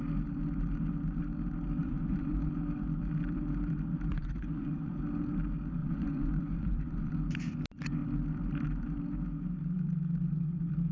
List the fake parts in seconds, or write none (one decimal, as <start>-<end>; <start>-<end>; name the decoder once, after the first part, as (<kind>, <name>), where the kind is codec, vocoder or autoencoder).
1.8-2.5 (vocoder, Vocos); 4.1-4.9; 5.8-7.1